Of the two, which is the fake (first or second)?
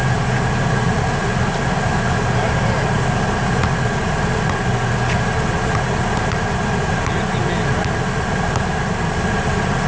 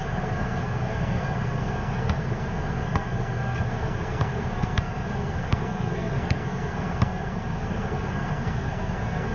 second